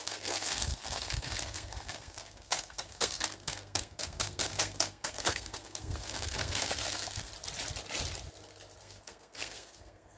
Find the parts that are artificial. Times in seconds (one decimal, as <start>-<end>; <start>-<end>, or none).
0.0-7.3; 8.8-10.2